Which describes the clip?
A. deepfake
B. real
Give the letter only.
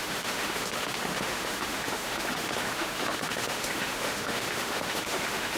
A